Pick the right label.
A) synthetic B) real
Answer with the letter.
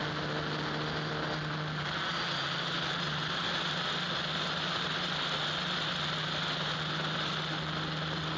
B